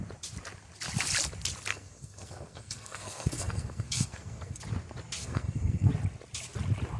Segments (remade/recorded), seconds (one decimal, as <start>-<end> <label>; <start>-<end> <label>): 0.0-1.7 recorded; 1.7-4.6 remade; 4.6-5.2 recorded; 5.2-5.9 remade; 5.9-7.0 recorded